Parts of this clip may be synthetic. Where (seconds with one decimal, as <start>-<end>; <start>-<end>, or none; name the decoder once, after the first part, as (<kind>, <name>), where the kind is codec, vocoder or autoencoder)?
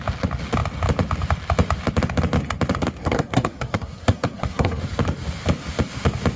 3.0-4.8 (codec, SNAC)